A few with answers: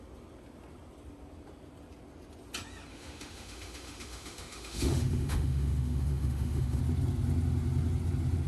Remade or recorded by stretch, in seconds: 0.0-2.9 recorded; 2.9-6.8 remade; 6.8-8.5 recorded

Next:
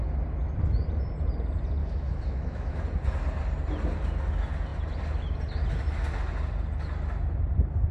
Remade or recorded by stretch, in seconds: 0.0-1.8 recorded; 1.8-2.8 remade; 2.8-7.9 recorded